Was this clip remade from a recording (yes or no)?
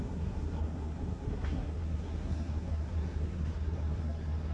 yes